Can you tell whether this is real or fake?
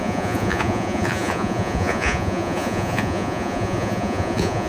fake